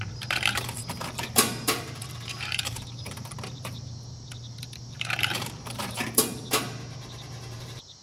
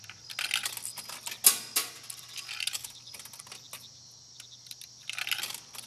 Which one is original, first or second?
second